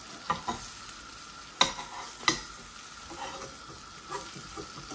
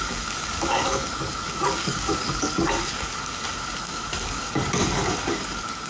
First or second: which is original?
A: first